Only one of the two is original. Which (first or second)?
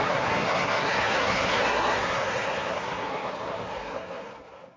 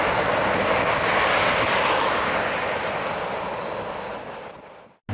second